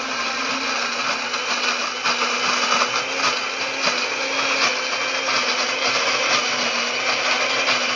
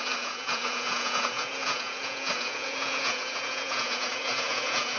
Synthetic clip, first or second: second